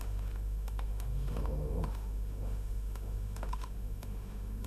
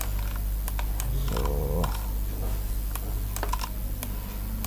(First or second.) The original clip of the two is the second